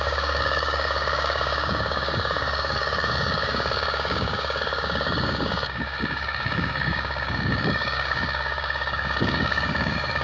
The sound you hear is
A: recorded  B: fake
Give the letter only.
B